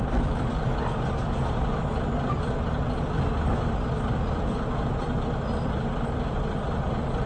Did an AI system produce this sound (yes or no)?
no